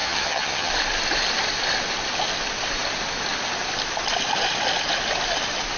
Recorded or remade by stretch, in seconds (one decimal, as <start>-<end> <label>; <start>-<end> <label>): 0.0-0.7 remade; 0.7-5.8 recorded